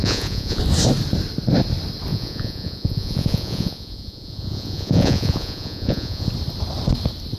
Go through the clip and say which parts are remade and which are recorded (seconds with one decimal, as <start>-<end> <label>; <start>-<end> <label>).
0.0-0.6 remade; 0.6-2.1 recorded; 2.1-6.3 remade; 6.3-7.4 recorded